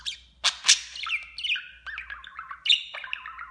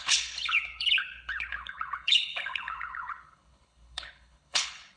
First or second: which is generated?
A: second